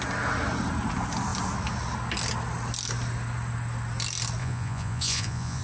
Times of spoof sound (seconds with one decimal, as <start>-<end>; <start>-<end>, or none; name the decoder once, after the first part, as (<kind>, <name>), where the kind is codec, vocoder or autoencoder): 4.4-5.6 (vocoder, Vocos)